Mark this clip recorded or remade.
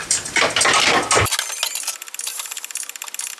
recorded